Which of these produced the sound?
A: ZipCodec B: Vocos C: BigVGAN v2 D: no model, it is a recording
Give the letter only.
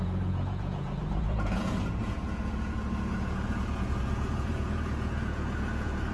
B